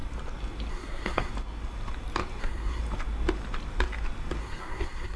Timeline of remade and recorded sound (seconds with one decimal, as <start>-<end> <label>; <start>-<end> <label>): 0.0-0.7 recorded; 0.7-1.3 remade; 1.3-2.4 recorded; 2.4-2.8 remade; 2.8-4.4 recorded; 4.4-5.2 remade